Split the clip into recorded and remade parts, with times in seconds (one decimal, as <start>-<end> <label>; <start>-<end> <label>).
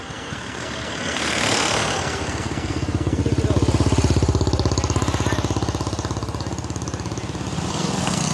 0.0-3.2 remade; 3.2-7.7 recorded; 7.7-8.3 remade